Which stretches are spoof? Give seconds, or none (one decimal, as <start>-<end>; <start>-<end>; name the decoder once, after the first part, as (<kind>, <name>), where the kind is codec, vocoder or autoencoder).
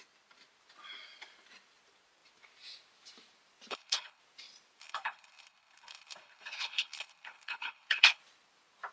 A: 3.7-4.2 (codec, HILCodec); 4.8-8.2